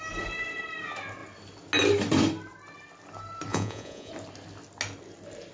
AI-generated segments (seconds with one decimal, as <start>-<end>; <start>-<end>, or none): 3.5-4.1